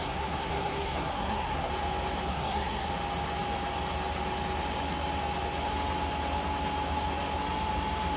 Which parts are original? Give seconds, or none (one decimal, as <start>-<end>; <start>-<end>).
1.7-2.3; 2.9-8.2